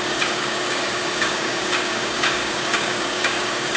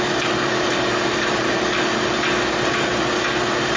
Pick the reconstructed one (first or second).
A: first